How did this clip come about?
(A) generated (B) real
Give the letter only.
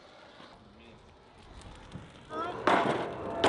B